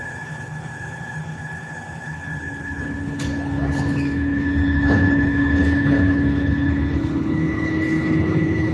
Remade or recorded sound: remade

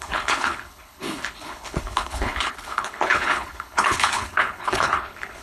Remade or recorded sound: remade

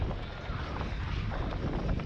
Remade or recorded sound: recorded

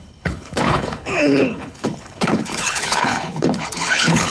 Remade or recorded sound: remade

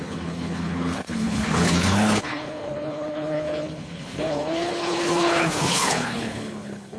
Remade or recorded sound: remade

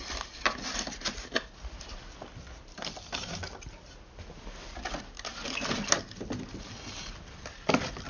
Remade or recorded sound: recorded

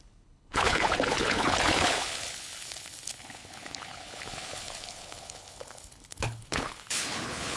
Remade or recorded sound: remade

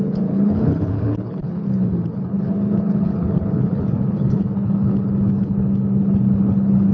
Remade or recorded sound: remade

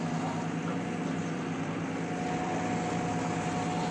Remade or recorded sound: recorded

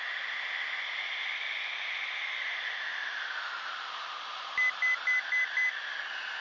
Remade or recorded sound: recorded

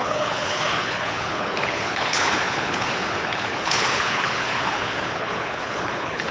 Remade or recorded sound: remade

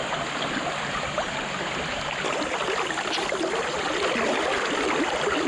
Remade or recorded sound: recorded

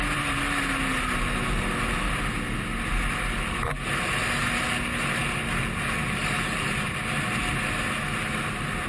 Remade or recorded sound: recorded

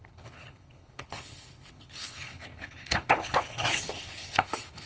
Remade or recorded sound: remade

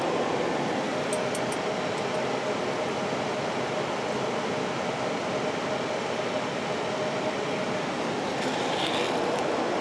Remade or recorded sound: recorded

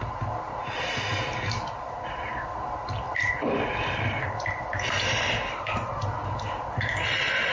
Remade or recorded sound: recorded